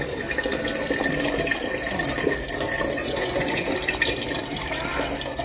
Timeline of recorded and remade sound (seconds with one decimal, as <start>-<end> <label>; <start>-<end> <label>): 0.0-3.0 recorded; 3.0-3.7 remade; 3.7-5.4 recorded